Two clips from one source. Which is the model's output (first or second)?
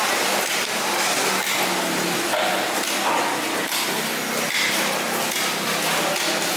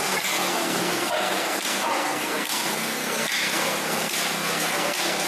second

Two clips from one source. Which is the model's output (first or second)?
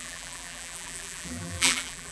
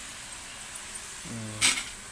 first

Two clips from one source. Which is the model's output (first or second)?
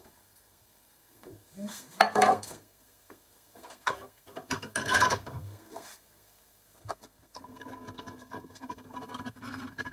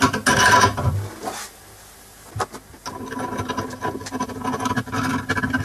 first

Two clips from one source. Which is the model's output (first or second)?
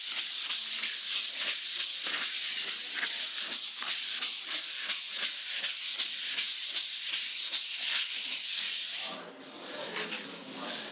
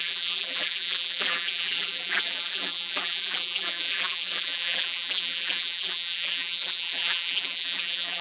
second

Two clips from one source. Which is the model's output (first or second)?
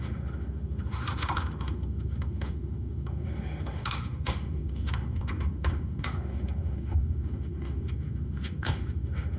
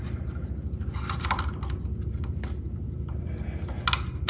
first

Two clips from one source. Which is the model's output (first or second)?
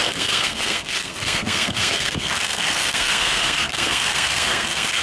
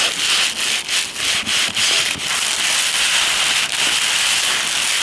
first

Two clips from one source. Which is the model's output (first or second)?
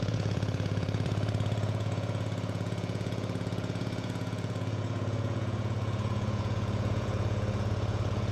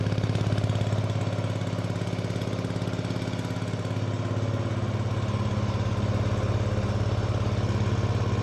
first